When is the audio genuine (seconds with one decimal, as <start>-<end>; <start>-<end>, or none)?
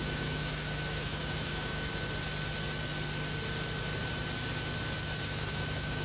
1.9-5.2